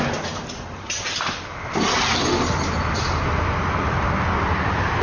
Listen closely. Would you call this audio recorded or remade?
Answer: recorded